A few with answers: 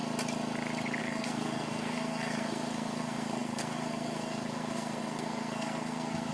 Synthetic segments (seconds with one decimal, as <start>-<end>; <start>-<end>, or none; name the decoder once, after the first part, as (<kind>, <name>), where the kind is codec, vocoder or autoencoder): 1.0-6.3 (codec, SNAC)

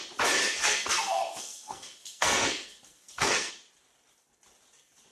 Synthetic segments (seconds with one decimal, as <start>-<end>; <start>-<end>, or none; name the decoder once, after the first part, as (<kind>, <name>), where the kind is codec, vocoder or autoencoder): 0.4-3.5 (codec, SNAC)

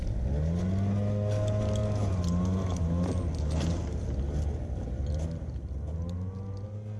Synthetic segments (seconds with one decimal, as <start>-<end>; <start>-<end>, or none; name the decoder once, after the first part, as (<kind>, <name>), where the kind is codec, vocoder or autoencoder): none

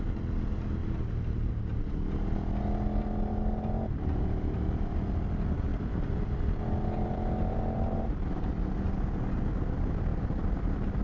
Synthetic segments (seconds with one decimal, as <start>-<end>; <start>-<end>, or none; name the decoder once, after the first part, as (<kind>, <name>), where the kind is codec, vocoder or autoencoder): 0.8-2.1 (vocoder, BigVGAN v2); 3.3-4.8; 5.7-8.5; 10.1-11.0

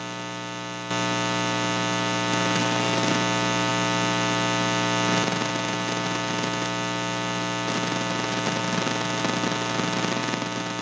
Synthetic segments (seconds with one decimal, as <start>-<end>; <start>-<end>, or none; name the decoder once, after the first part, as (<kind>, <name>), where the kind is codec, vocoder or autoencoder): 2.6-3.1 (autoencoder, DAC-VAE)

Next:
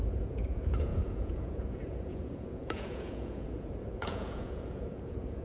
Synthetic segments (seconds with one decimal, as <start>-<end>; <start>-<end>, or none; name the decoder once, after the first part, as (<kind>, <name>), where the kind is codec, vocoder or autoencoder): 0.0-5.4 (vocoder, Vocos)